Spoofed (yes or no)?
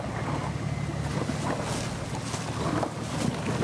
no